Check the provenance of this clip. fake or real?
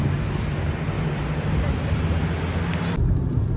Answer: real